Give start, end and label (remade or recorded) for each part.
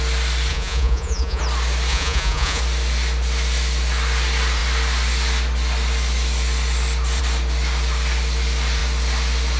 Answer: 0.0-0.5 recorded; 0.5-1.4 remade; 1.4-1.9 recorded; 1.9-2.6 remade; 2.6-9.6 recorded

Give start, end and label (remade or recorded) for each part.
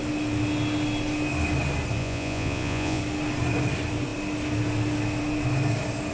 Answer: 0.0-2.0 recorded; 2.0-3.0 remade; 3.0-6.1 recorded